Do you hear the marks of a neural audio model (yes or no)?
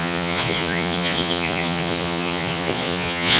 yes